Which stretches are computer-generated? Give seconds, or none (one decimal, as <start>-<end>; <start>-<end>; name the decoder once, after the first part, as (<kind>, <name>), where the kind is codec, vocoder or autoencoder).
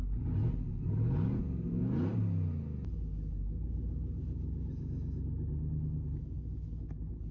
none